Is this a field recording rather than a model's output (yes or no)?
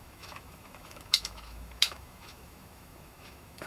no